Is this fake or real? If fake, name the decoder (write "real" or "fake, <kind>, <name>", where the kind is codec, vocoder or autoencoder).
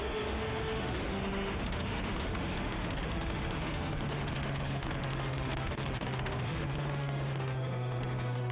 fake, autoencoder, DAC-VAE